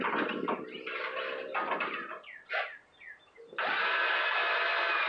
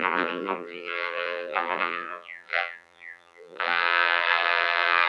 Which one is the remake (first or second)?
second